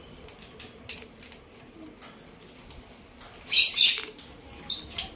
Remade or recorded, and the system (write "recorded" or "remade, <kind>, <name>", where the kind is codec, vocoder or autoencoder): recorded